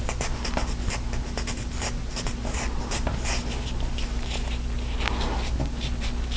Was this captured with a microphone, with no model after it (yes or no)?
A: yes